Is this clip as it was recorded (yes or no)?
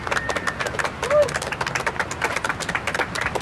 yes